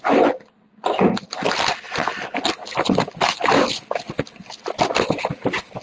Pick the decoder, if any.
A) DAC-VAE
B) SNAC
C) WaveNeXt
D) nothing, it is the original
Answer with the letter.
D